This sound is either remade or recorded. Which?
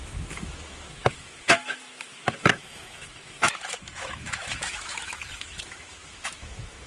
remade